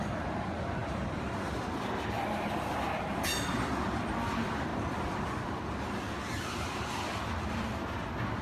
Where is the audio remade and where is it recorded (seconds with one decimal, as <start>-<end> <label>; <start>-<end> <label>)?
0.0-8.4 recorded